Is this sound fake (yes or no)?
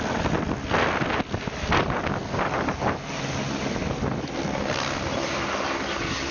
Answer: no